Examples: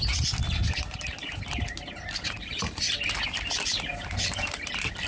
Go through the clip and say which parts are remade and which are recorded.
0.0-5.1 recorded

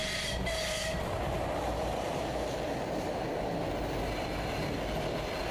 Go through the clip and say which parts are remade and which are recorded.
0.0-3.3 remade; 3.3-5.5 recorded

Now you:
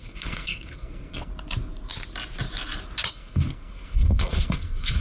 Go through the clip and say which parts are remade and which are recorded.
0.0-1.3 remade; 1.3-3.1 recorded; 3.1-5.0 remade

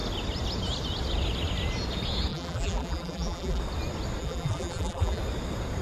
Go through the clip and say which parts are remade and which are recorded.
0.0-2.3 recorded; 2.3-3.6 remade; 3.6-4.2 recorded; 4.2-5.2 remade; 5.2-5.8 recorded

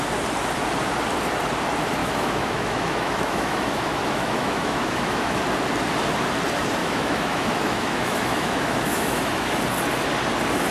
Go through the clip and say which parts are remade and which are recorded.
0.0-2.0 recorded; 2.0-5.4 remade; 5.4-6.8 recorded; 6.8-9.6 remade; 9.6-10.7 recorded

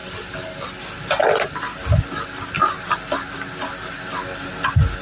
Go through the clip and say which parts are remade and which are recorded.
0.0-5.0 recorded